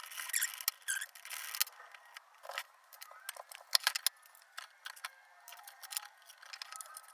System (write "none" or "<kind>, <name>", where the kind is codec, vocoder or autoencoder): none